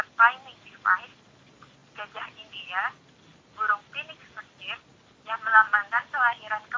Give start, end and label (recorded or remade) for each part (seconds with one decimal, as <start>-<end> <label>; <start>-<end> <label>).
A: 0.0-6.8 recorded